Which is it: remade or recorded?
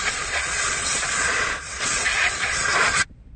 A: remade